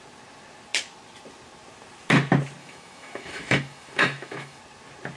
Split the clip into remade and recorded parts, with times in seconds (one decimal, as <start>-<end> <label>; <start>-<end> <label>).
0.0-2.6 recorded; 2.6-4.6 remade; 4.6-5.2 recorded